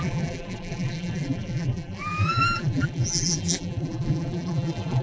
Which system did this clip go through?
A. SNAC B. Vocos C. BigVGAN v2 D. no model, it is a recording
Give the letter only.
C